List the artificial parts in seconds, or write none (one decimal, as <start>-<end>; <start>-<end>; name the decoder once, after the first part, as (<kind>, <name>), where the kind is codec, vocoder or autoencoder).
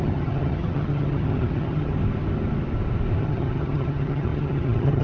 0.0-1.9 (vocoder, HiFi-GAN); 3.2-5.0